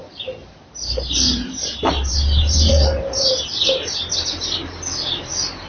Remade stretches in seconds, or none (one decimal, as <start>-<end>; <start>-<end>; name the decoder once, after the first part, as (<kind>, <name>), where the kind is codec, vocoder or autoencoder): 0.4-3.7 (vocoder, BigVGAN v2)